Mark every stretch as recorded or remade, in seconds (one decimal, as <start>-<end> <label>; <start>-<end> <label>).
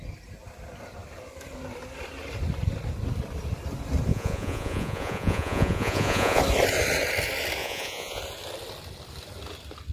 0.0-4.1 recorded; 4.1-6.4 remade; 6.4-7.6 recorded; 7.6-8.2 remade; 8.2-9.9 recorded